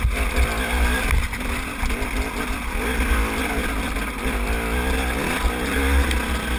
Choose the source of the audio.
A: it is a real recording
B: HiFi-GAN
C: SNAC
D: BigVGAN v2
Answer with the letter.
A